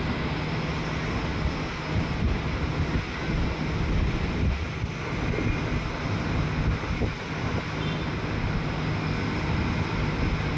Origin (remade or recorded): recorded